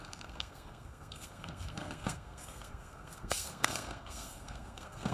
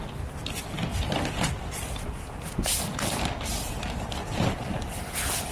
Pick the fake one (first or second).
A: first